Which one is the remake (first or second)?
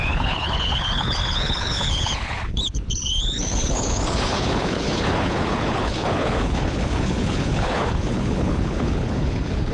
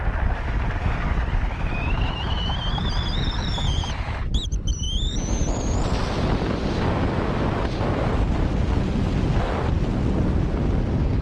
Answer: first